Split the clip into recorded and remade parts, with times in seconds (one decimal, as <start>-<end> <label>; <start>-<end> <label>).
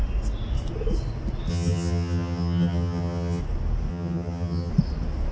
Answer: 0.0-1.5 recorded; 1.5-3.4 remade; 3.4-3.9 recorded; 3.9-4.7 remade; 4.7-5.3 recorded